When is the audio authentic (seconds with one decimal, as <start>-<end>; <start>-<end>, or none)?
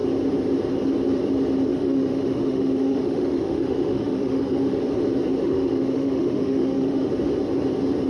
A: 0.0-1.7; 4.8-5.4; 7.1-8.1